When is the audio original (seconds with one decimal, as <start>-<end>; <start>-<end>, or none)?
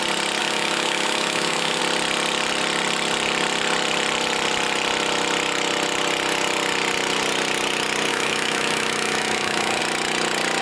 0.0-0.4; 1.8-8.1; 9.8-10.6